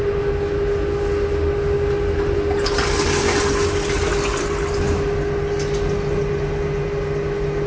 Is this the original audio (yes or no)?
yes